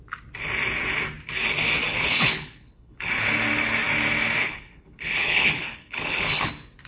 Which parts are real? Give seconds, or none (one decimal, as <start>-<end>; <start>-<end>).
0.0-1.9; 3.1-4.4; 6.5-6.9